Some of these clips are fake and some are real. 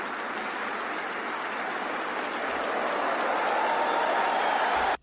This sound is real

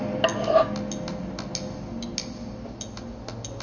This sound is real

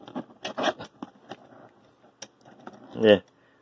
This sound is real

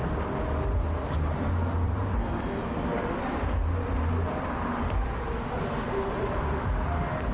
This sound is real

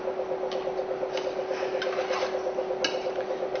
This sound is real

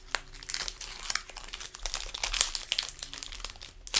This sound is real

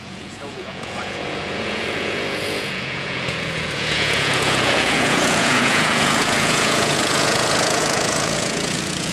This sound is fake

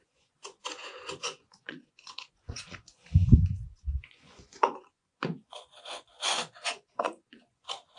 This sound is fake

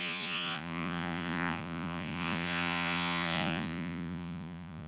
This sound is fake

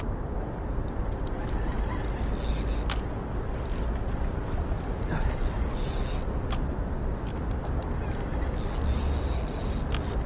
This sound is real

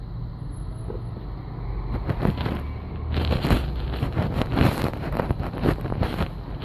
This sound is real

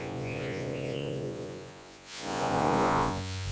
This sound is fake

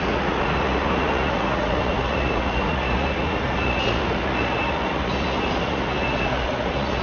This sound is fake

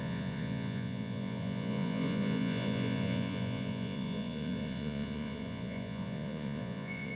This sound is fake